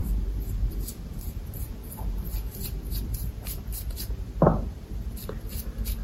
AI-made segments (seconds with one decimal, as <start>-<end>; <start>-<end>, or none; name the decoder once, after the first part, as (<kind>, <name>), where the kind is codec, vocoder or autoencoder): 0.0-3.4 (vocoder, BigVGAN v2)